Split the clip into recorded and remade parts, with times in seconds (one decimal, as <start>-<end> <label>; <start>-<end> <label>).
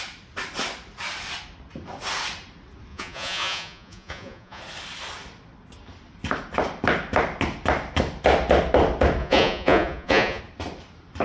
0.0-2.9 recorded; 2.9-4.6 remade; 4.6-9.2 recorded; 9.2-10.4 remade; 10.4-11.2 recorded